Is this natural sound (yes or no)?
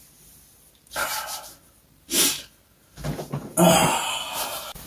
yes